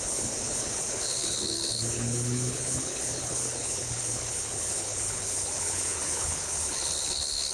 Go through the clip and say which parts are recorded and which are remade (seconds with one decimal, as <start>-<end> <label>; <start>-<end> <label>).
0.0-7.5 remade